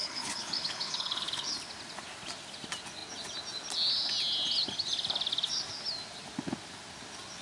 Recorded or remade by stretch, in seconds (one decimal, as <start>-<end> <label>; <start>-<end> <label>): 0.0-1.5 remade; 1.5-7.4 recorded

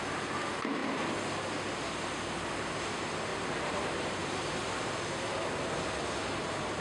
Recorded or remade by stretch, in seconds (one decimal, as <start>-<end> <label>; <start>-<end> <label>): 0.0-6.8 recorded

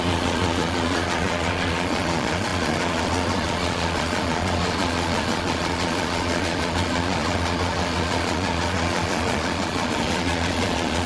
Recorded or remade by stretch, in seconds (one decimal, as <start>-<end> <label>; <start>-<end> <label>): 0.0-11.1 remade

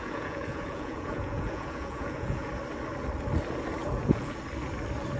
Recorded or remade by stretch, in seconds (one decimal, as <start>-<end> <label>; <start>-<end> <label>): 0.0-2.5 remade; 2.5-3.8 recorded; 3.8-4.4 remade; 4.4-5.2 recorded

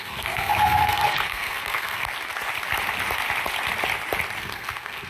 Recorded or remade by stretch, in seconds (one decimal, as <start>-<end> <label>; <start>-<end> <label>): 0.0-2.0 remade; 2.0-4.4 recorded; 4.4-5.1 remade

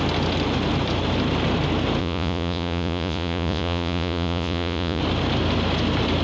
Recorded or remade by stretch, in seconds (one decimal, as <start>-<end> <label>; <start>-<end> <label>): 0.0-2.0 recorded; 2.0-5.0 remade; 5.0-6.2 recorded

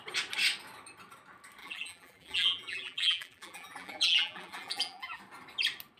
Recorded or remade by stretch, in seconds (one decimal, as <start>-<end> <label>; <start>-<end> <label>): 0.0-1.6 recorded; 1.6-5.2 remade; 5.2-6.0 recorded